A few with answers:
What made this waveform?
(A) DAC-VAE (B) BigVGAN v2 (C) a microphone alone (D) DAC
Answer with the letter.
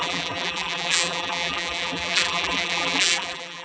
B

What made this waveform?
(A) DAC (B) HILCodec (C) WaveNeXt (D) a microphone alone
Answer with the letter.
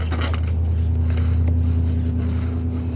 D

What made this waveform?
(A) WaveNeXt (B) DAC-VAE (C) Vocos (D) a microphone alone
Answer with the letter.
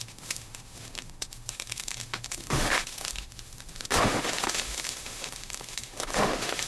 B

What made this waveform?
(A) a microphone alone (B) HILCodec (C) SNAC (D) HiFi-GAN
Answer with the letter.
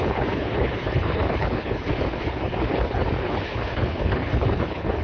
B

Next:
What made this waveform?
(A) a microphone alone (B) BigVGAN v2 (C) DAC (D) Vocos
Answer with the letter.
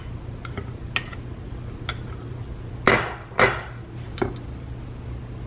A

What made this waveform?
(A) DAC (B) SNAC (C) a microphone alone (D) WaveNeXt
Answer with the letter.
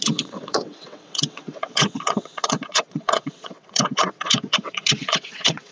D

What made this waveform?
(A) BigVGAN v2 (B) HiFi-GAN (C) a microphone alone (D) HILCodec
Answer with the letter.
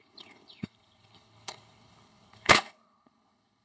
D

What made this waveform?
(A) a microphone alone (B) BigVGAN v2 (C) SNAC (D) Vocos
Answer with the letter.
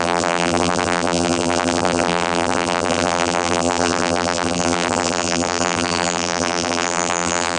B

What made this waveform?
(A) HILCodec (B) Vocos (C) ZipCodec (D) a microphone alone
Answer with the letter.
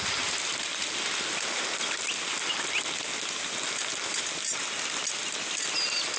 D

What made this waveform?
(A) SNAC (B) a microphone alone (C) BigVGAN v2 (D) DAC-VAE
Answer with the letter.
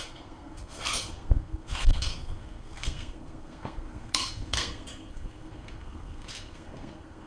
A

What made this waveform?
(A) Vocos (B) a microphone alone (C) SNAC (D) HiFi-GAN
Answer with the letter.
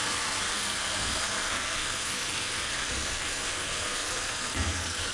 C